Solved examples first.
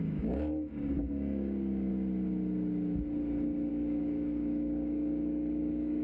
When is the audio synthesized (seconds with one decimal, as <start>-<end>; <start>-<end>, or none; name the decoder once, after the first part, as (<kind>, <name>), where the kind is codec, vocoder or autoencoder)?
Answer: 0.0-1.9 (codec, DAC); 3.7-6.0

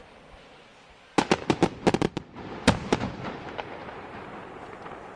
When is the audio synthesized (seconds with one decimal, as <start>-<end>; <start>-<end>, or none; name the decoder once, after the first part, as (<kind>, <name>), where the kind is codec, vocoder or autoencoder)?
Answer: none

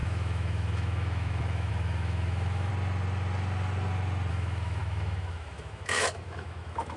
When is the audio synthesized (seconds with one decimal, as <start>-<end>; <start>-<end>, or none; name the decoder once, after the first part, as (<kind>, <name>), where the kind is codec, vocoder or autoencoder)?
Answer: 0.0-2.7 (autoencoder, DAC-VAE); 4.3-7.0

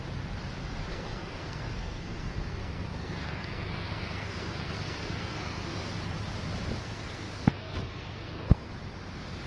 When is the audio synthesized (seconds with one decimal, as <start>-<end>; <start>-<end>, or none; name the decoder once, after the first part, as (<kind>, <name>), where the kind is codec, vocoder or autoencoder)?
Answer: 0.9-5.9 (codec, SNAC); 6.8-8.7

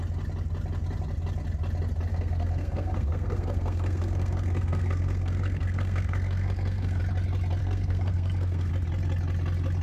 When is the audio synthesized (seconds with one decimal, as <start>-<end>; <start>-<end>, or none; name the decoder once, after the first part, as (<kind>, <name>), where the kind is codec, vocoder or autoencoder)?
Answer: 2.1-7.0 (codec, SNAC); 7.6-8.7

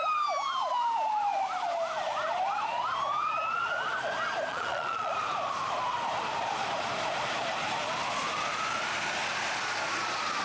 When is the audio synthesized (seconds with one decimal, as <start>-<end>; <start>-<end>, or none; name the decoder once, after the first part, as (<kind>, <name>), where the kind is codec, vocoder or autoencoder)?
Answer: 4.5-5.1 (vocoder, Vocos)

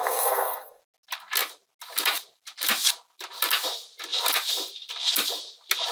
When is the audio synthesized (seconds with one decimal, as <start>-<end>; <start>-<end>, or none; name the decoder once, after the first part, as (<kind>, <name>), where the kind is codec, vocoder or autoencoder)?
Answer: 0.0-0.8 (codec, SNAC)